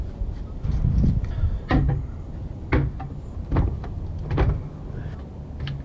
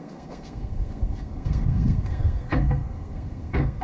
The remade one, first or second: second